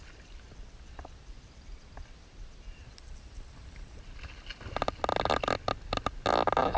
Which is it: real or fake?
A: real